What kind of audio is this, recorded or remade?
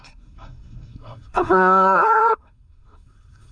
remade